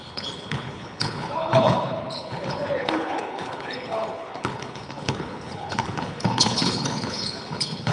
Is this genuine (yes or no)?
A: no